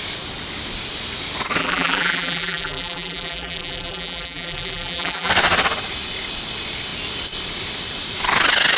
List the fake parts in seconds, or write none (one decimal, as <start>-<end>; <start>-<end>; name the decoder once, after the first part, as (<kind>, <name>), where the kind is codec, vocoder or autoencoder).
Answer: 1.6-5.3 (vocoder, BigVGAN v2)

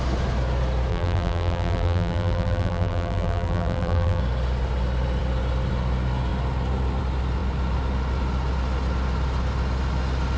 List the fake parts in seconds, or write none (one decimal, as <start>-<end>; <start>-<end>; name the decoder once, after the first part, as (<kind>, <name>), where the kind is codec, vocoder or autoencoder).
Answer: 0.9-4.2 (vocoder, BigVGAN v2)

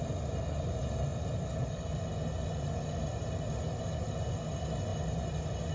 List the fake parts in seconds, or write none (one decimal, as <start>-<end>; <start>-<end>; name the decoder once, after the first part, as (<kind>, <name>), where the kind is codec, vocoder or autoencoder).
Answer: none

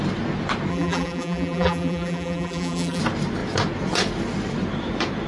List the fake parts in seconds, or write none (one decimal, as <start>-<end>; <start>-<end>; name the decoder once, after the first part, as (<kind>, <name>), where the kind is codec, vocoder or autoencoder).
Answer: 0.7-3.0 (vocoder, BigVGAN v2)

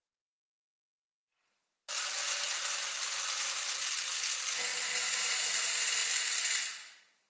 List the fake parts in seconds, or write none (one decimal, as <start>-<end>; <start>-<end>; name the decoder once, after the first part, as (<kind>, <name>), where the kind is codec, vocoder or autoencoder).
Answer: none

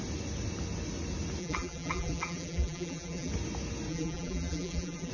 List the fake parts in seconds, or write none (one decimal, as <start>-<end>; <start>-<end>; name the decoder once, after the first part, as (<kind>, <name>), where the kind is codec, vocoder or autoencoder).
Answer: 1.4-3.3 (vocoder, BigVGAN v2); 3.9-5.1

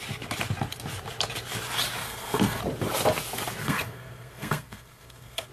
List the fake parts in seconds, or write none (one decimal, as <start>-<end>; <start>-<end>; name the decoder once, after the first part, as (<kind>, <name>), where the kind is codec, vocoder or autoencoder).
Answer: 2.0-2.6 (codec, SNAC); 3.6-5.5